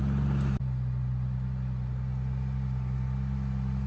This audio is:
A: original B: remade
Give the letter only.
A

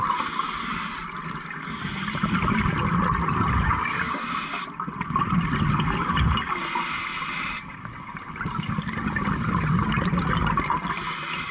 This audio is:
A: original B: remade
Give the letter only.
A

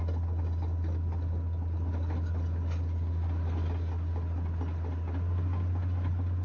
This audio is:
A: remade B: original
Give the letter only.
B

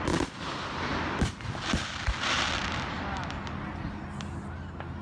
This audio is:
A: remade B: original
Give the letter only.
B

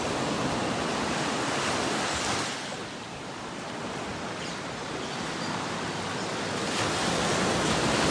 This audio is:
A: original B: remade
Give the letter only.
A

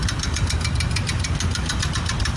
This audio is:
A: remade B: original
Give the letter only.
A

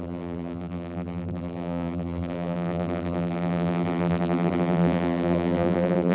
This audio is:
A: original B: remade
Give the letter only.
B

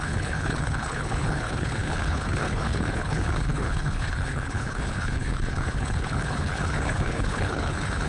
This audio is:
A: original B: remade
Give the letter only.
B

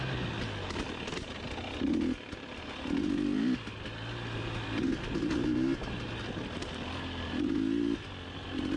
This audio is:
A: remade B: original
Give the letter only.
B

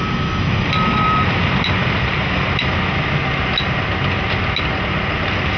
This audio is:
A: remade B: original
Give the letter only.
B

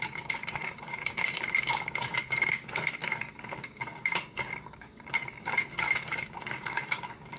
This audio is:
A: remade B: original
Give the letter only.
A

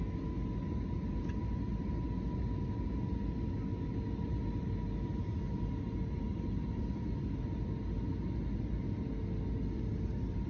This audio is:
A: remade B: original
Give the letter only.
B